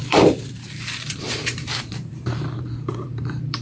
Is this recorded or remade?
remade